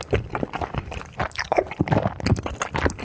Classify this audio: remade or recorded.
recorded